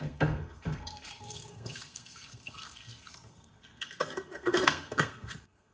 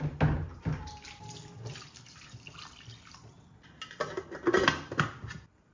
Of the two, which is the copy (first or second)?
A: first